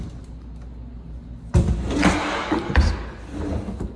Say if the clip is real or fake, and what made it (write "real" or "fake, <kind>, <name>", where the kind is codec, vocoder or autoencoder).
real